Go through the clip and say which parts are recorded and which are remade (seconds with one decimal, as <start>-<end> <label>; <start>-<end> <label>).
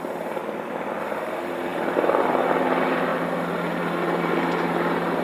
0.0-0.4 remade; 0.4-1.0 recorded; 1.0-5.2 remade